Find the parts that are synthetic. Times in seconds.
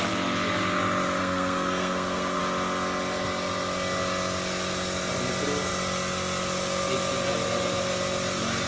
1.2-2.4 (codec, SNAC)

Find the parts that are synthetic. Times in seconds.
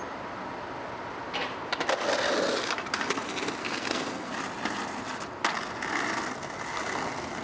3.6-4.3 (codec, SNAC)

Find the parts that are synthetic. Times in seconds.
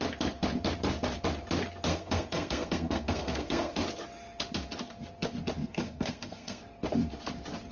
1.9-3.8 (codec, SNAC); 5.6-6.6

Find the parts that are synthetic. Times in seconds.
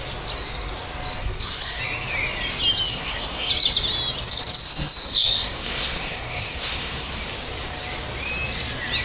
1.2-1.8 (codec, SNAC); 2.9-3.5; 4.6-7.2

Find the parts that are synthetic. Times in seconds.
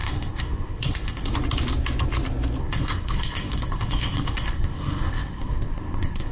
0.0-1.3 (codec, SNAC); 2.6-6.3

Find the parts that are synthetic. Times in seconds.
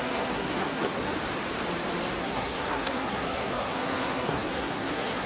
0.0-1.0 (codec, SNAC); 2.2-5.3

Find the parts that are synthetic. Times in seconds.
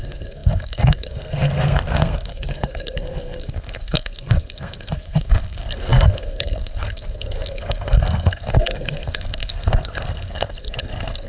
0.0-11.3 (codec, SNAC)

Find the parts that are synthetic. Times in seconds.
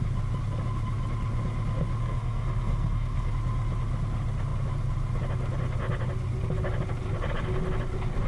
2.0-3.3 (codec, SNAC)